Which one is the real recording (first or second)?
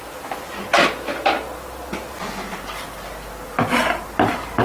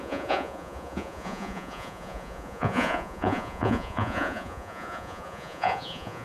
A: first